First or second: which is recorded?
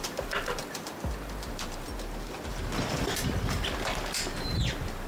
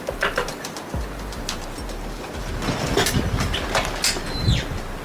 second